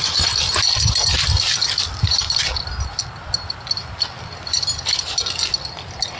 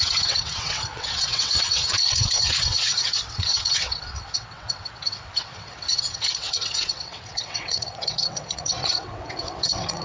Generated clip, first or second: second